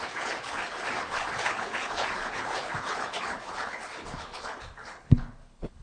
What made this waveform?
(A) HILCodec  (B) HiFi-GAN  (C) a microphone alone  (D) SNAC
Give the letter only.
A